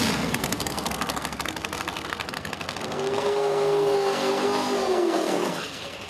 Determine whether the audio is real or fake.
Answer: fake